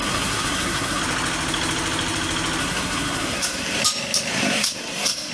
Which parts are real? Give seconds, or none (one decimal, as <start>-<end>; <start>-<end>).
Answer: 1.0-2.6; 3.8-4.3